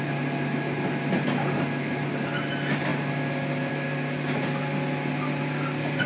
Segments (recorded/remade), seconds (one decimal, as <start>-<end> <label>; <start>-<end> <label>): 0.0-6.1 recorded